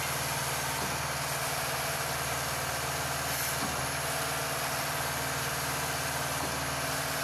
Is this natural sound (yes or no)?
yes